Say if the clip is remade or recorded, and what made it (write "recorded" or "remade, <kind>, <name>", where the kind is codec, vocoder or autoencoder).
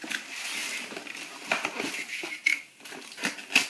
recorded